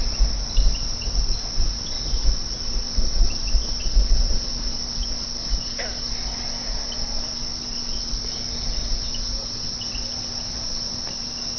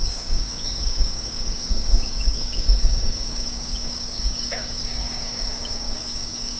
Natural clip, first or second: first